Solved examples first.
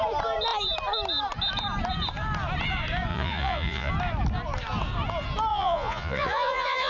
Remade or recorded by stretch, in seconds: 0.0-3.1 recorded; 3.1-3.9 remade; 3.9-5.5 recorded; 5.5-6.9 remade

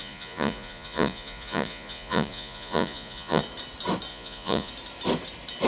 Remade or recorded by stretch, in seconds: 0.0-3.4 remade; 3.4-4.1 recorded; 4.1-4.7 remade; 4.7-5.7 recorded

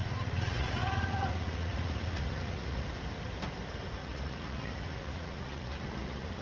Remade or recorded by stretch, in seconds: 0.0-2.9 remade; 2.9-4.0 recorded; 4.0-6.4 remade

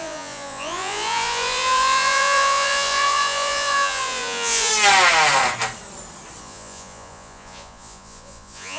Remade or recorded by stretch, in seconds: 0.0-4.7 remade; 4.7-6.4 recorded; 6.4-8.8 remade

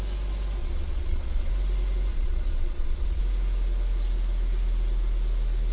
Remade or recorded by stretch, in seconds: 0.0-0.6 recorded; 0.6-1.5 remade; 1.5-2.1 recorded; 2.1-3.2 remade; 3.2-5.7 recorded

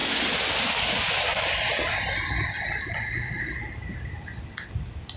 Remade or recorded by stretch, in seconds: 0.0-5.2 recorded